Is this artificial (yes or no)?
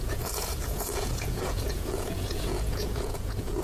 yes